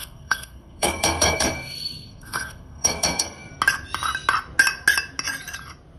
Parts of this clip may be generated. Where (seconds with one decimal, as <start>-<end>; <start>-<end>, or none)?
0.0-3.5